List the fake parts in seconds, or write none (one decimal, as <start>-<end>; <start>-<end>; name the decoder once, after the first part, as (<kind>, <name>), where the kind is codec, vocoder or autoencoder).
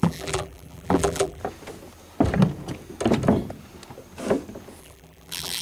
0.0-1.4 (vocoder, BigVGAN v2); 4.8-5.6